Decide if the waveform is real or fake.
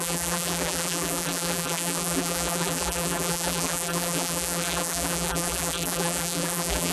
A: fake